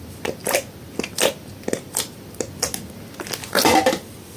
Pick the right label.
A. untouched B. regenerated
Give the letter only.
A